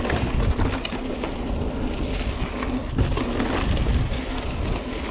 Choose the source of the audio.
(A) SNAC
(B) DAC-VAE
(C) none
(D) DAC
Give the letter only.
C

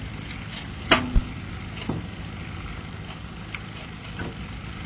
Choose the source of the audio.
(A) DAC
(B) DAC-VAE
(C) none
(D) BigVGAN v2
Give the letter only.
C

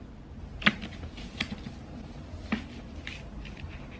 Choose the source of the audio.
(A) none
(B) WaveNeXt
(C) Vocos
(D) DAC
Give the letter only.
A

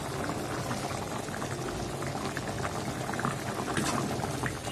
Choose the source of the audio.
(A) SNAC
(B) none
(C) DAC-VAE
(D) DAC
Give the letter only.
B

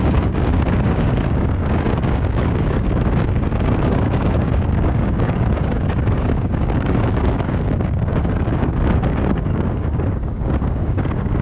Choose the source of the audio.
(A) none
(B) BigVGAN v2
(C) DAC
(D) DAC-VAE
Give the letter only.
C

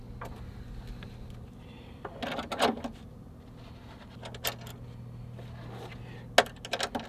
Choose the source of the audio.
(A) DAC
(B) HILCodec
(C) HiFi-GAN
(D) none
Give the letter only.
D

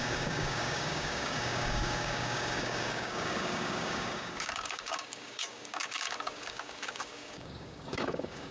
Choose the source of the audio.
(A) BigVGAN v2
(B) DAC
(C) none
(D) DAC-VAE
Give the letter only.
B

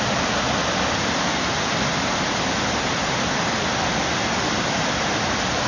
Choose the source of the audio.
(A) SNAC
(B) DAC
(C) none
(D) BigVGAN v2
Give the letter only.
C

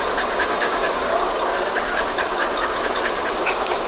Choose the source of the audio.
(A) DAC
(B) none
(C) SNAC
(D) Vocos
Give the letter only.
A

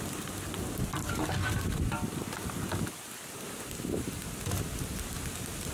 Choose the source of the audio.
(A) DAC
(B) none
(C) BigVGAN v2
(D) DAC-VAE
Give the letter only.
B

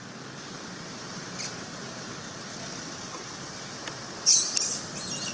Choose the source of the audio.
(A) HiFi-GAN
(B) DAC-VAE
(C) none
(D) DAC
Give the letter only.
C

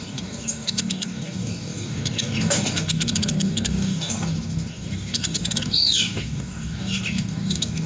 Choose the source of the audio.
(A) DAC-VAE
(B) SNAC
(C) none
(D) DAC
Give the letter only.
D